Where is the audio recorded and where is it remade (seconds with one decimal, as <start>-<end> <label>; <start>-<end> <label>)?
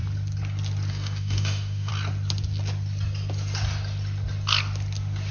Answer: 0.0-0.9 recorded; 0.9-1.9 remade; 1.9-5.3 recorded